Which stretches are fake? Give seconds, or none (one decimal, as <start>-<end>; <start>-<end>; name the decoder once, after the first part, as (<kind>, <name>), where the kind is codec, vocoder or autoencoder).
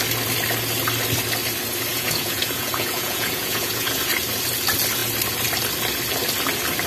1.9-4.1 (vocoder, Vocos)